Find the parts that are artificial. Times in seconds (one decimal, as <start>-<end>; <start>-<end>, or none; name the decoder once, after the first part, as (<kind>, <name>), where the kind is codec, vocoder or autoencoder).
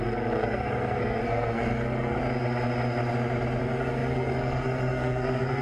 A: 0.0-2.2 (codec, SNAC); 3.6-5.6